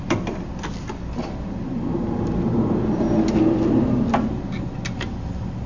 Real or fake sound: real